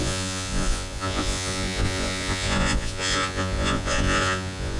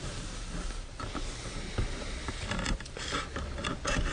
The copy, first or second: first